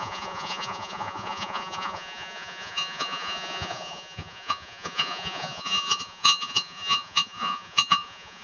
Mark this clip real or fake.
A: fake